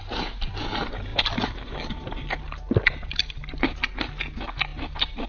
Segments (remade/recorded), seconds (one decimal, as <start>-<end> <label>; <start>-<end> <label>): 0.0-1.1 recorded; 1.1-2.4 remade; 2.4-5.3 recorded